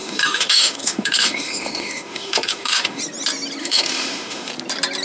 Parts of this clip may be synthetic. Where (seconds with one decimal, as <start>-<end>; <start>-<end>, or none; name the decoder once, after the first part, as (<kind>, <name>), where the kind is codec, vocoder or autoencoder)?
0.0-3.0 (autoencoder, DAC-VAE); 3.6-4.5